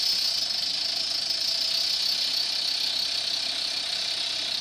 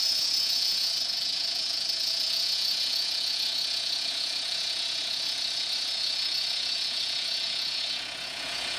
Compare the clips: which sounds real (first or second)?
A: first